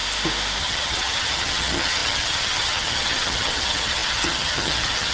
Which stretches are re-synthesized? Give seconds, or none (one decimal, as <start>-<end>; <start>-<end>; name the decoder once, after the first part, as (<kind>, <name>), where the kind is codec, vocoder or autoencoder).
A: 0.6-5.1 (vocoder, HiFi-GAN)